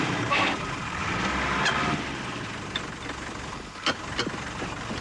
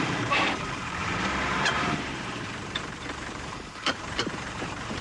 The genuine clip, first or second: first